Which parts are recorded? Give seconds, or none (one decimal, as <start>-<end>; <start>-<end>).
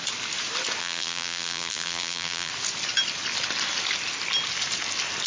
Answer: 0.0-0.8; 2.5-5.3